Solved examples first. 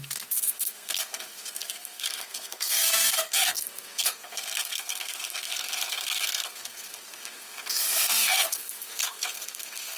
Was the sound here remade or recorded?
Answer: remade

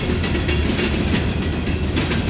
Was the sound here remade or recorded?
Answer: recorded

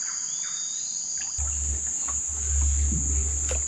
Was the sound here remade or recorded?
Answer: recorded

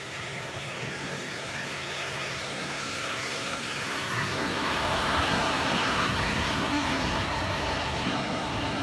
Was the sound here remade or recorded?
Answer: remade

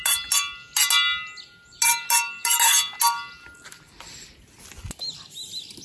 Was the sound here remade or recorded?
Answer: recorded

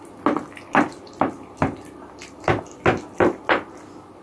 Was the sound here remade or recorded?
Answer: recorded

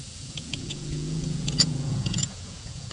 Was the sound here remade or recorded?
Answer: remade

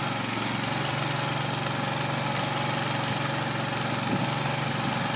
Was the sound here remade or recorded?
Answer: recorded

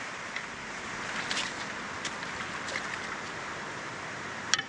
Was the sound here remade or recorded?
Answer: recorded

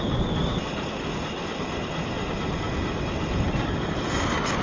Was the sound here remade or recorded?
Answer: recorded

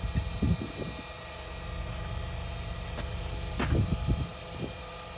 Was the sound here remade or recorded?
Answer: recorded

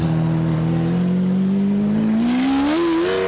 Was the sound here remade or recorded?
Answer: recorded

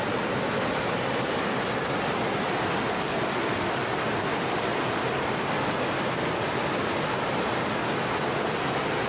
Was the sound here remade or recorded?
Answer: recorded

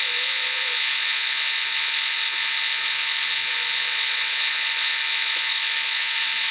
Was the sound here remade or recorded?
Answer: remade